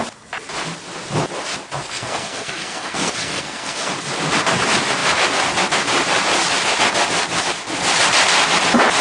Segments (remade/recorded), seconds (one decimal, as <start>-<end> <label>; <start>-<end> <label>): 0.0-1.8 recorded; 1.8-3.9 remade; 3.9-9.0 recorded

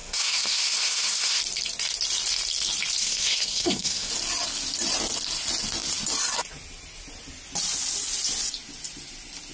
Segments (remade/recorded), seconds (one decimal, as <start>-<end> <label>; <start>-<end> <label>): 0.0-1.4 remade; 1.4-3.0 recorded; 3.0-4.1 remade; 4.1-9.5 recorded

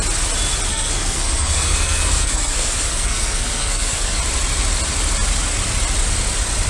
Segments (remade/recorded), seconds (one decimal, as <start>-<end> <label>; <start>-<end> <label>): 0.0-0.7 recorded; 0.7-4.2 remade; 4.2-6.7 recorded

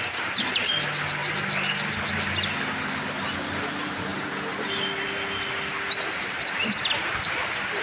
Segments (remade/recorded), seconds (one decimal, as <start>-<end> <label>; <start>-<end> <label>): 0.0-7.8 recorded

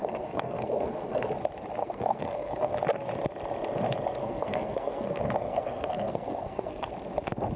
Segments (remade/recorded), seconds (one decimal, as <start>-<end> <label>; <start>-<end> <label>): 0.0-1.3 remade; 1.3-1.8 recorded; 1.8-2.7 remade; 2.7-4.2 recorded; 4.2-6.9 remade; 6.9-7.6 recorded